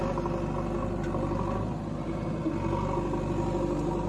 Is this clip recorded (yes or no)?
yes